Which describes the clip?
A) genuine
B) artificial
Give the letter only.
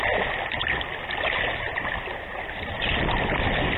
A